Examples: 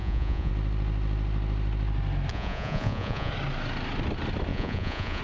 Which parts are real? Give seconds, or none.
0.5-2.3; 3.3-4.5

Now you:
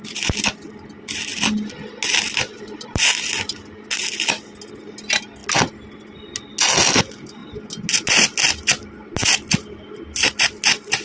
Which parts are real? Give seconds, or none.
0.0-11.0

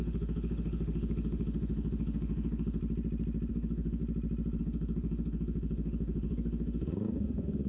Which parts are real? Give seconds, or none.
2.8-3.5; 4.0-4.6